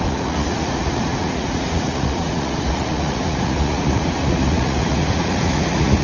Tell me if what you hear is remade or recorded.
remade